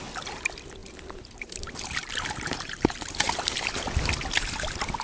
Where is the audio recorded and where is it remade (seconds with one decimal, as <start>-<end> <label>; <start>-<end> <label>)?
0.0-0.8 recorded; 0.8-3.8 remade; 3.8-5.0 recorded